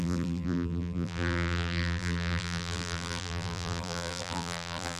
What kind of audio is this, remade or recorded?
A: remade